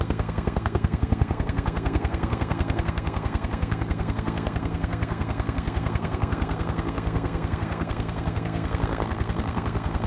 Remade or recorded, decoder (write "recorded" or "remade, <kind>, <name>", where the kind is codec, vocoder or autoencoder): remade, codec, SNAC